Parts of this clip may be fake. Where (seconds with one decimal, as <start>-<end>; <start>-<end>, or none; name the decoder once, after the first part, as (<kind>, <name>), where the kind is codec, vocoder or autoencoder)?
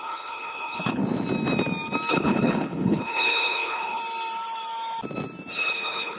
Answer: 0.0-1.0 (codec, HILCodec); 2.1-4.0; 5.5-6.2